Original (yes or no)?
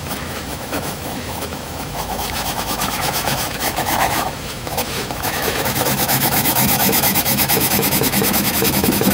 no